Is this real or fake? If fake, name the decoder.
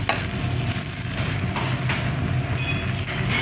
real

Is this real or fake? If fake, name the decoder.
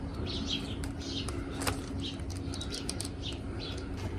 real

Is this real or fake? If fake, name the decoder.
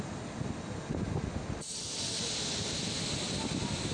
real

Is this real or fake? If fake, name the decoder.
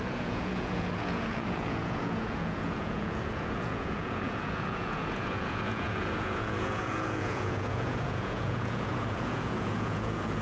fake, vocoder, Vocos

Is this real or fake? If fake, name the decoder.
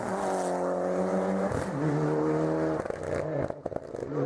real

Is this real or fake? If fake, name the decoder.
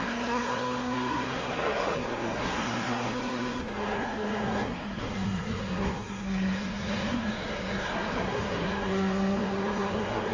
fake, codec, SNAC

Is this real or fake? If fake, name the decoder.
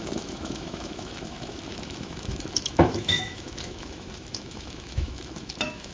fake, autoencoder, DAC-VAE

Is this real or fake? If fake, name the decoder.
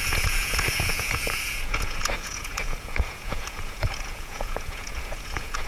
fake, vocoder, Vocos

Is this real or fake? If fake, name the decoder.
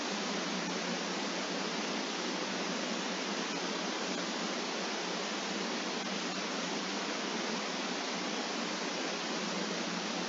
real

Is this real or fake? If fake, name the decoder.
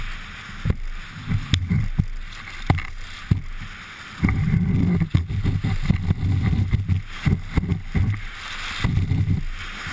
real